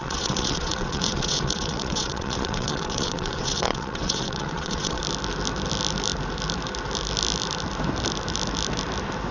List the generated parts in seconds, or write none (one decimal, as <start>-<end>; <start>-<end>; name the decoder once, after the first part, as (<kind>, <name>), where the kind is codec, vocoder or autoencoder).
0.0-5.0 (vocoder, WaveNeXt)